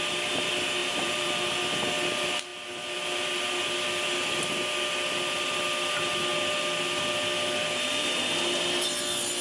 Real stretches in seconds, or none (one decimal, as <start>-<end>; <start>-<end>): 0.0-0.8; 1.5-9.4